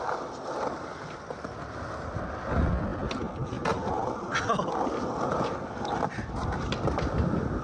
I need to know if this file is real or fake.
real